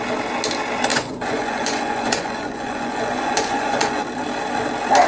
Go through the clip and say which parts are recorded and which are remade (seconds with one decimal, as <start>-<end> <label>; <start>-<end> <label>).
0.0-0.9 recorded; 0.9-4.0 remade; 4.0-5.1 recorded